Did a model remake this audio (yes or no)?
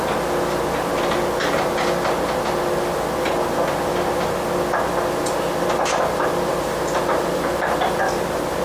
no